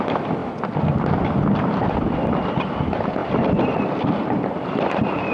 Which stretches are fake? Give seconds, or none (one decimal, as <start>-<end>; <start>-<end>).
none